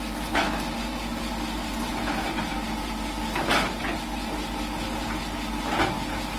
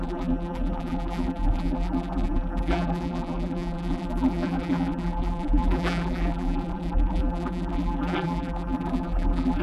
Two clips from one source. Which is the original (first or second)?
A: first